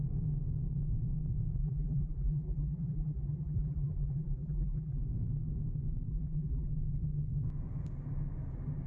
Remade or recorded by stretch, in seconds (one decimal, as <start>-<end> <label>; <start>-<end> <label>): 0.0-1.6 recorded; 1.6-5.0 remade; 5.0-6.1 recorded; 6.1-6.7 remade; 6.7-8.9 recorded